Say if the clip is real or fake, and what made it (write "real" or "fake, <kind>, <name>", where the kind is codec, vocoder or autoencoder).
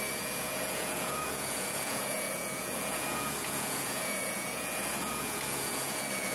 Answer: fake, vocoder, Vocos